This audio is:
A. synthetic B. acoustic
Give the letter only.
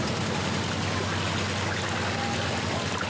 B